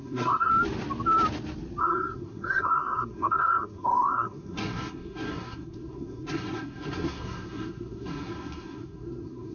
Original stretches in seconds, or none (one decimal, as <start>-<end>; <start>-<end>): 0.5-1.8

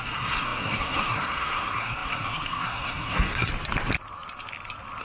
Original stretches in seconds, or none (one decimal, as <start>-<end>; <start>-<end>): 3.5-5.0